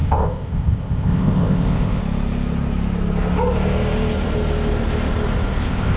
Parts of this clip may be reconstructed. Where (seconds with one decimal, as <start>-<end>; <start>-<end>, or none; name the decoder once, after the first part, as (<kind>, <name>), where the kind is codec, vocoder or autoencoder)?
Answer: 0.0-2.0 (codec, ZipCodec); 5.6-6.0